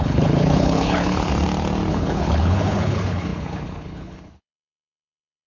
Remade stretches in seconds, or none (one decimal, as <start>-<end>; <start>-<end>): 0.0-1.3; 1.9-5.5